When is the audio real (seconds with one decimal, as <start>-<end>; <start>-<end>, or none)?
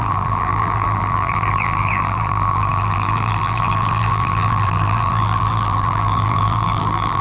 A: none